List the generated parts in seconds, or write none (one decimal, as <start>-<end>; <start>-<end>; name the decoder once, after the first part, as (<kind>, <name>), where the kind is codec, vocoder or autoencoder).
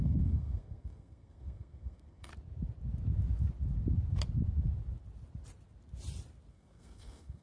0.0-2.3 (codec, SNAC); 6.5-7.4